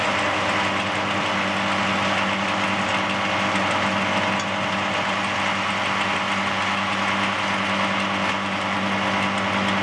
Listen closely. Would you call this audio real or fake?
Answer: real